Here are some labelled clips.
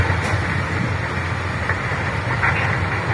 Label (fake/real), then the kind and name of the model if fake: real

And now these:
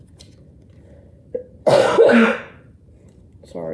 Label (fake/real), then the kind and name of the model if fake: real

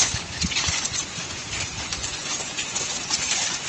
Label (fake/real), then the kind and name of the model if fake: fake, vocoder, Vocos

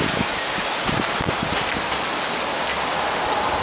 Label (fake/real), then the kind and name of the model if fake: real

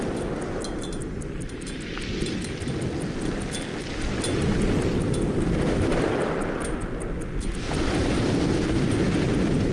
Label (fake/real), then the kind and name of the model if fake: real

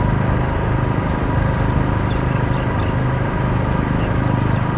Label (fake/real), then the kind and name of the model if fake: real